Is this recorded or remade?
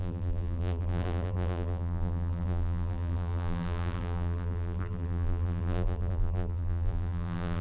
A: remade